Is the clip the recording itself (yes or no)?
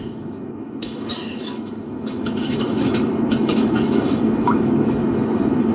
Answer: no